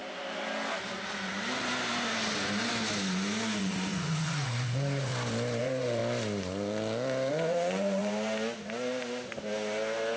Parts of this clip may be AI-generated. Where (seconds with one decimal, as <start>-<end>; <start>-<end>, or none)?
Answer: 3.6-5.1; 5.6-6.0; 7.3-8.0